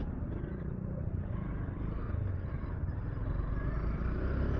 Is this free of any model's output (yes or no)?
yes